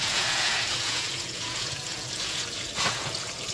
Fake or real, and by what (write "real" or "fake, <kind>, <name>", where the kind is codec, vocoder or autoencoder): fake, vocoder, Vocos